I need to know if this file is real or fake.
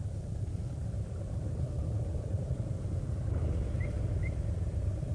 fake